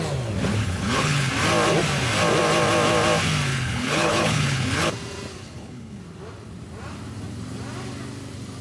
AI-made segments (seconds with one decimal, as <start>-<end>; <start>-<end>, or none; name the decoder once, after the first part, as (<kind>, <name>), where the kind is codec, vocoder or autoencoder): 0.6-1.3 (codec, HILCodec); 3.5-4.9; 5.4-6.0